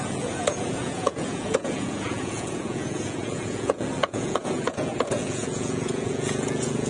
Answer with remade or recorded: remade